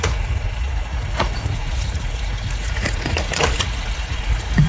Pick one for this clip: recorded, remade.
remade